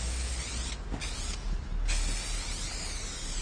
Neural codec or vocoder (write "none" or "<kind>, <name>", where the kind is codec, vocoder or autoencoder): none